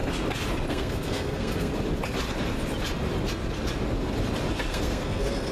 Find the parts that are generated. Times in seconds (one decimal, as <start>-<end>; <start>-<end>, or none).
0.7-1.7; 4.7-5.5